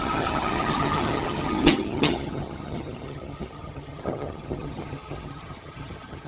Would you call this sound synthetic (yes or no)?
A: yes